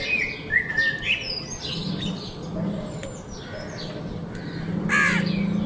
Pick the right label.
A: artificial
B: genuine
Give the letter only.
B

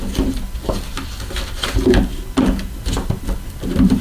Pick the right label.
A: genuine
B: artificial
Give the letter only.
A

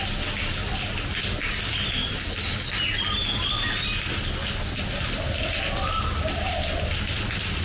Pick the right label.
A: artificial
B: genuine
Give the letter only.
B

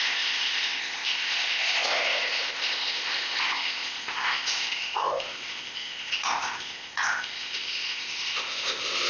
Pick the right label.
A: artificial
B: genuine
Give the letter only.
A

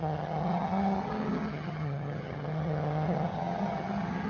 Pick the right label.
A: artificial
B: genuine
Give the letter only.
A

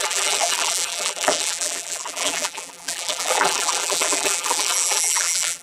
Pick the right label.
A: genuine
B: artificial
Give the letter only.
B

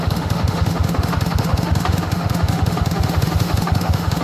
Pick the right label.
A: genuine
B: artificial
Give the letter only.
B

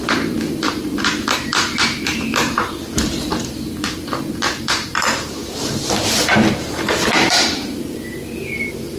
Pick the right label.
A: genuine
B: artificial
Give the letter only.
B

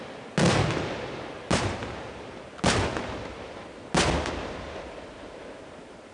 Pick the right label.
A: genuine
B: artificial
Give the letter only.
A